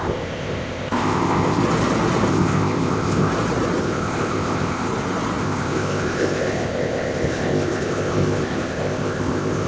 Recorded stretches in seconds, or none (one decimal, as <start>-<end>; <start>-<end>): 1.6-2.3; 3.3-3.8; 4.9-5.4